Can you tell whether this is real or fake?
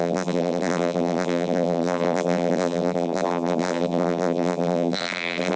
fake